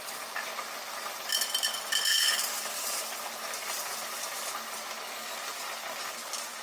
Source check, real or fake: real